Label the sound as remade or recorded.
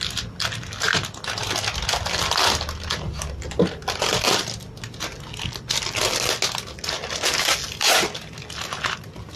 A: recorded